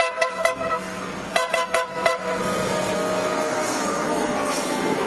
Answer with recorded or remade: remade